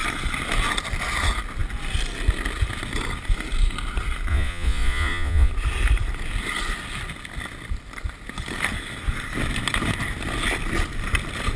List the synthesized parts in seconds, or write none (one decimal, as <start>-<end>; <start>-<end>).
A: 4.3-5.5